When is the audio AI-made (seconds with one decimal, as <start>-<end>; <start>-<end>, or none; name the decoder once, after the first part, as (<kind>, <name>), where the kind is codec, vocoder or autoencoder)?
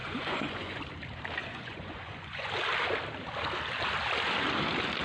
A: 0.0-0.8 (vocoder, Vocos); 1.4-2.5